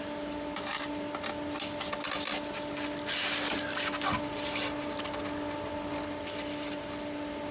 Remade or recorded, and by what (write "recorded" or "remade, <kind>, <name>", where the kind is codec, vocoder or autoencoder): recorded